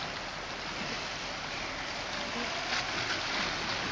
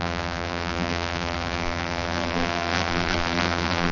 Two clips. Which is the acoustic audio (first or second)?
first